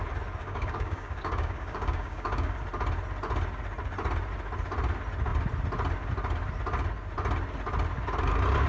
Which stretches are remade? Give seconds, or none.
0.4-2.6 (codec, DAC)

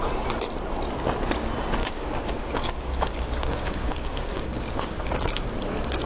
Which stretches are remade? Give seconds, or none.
1.8-5.5 (codec, DAC)

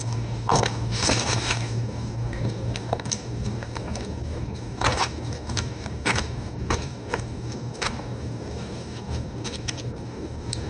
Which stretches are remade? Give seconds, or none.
0.0-10.7 (codec, DAC)